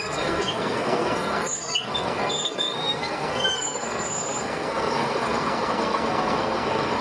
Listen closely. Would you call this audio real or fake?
fake